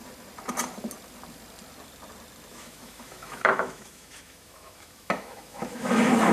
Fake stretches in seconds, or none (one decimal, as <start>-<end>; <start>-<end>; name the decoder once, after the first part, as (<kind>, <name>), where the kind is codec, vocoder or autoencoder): 2.5-6.3 (autoencoder, DAC-VAE)